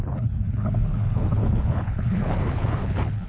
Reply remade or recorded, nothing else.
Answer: remade